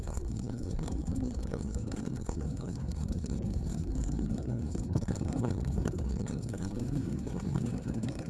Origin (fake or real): fake